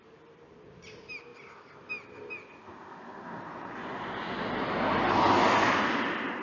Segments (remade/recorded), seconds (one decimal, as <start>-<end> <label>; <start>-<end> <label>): 0.0-3.5 recorded; 3.5-4.4 remade; 4.4-6.4 recorded